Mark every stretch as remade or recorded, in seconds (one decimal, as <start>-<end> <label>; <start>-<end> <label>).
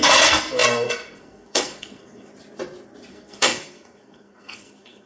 0.0-2.3 remade; 2.3-3.1 recorded; 3.1-5.1 remade